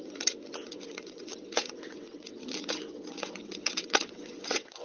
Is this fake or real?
fake